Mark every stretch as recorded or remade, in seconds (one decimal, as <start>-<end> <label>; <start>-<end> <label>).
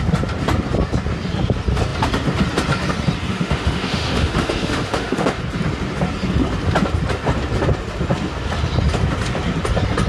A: 0.0-3.3 recorded; 3.3-5.4 remade; 5.4-10.1 recorded